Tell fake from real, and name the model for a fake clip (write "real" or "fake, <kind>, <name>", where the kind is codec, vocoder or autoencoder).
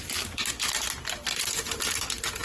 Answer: real